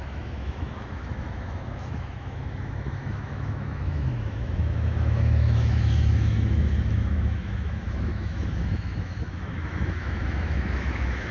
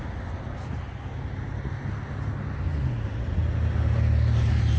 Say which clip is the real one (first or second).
second